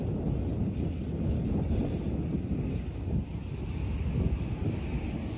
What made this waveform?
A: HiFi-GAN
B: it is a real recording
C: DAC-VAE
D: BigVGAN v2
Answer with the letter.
B